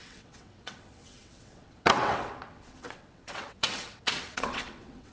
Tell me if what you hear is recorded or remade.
remade